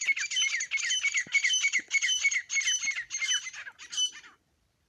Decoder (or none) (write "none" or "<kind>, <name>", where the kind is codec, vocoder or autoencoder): none